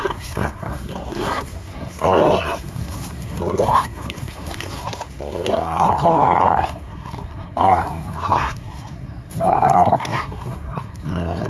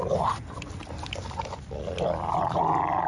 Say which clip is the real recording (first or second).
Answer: second